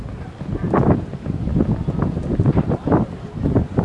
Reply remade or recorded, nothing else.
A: recorded